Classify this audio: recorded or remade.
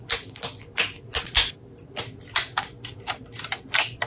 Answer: recorded